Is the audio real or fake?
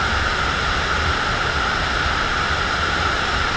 real